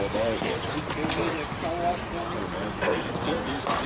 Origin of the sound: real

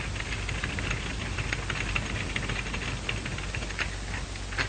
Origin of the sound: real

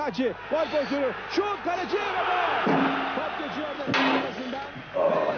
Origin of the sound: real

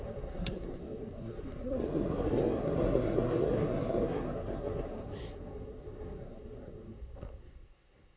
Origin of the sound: fake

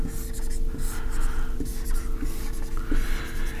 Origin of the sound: real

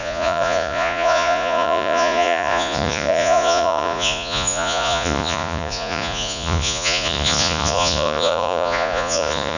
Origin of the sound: fake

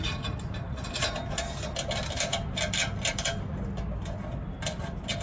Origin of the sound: real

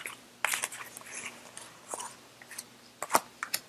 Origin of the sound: real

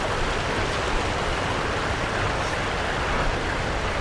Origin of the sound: real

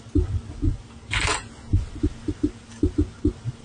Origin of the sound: real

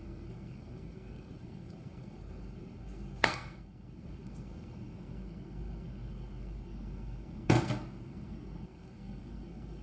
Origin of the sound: fake